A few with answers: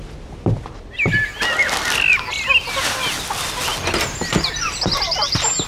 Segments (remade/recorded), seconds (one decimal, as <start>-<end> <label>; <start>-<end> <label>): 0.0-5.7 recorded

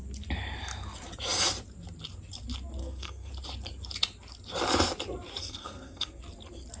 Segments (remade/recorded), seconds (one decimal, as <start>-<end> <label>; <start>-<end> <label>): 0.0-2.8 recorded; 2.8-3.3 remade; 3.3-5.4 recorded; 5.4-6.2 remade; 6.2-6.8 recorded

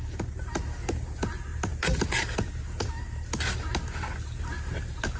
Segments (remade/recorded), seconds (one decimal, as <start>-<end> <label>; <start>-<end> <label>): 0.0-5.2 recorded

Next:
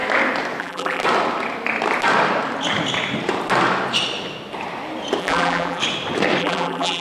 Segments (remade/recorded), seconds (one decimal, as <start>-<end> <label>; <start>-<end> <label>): 0.0-0.6 recorded; 0.6-1.0 remade; 1.0-5.2 recorded; 5.2-5.8 remade; 5.8-6.4 recorded; 6.4-7.0 remade

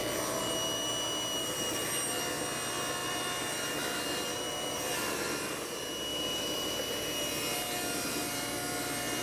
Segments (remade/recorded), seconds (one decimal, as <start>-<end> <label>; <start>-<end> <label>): 0.0-3.0 recorded; 3.0-5.5 remade; 5.5-6.1 recorded; 6.1-7.3 remade; 7.3-9.2 recorded

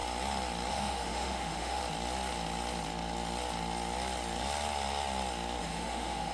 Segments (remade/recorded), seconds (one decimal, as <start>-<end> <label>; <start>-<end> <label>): 0.0-0.7 recorded; 0.7-1.8 remade; 1.8-5.6 recorded; 5.6-6.3 remade

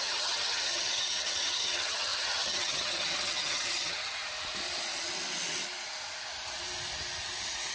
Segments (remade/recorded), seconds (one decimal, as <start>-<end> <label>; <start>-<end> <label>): 0.0-4.2 remade; 4.2-7.7 recorded